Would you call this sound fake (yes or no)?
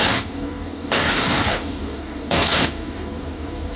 yes